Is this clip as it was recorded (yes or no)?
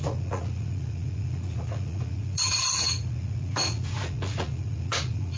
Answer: no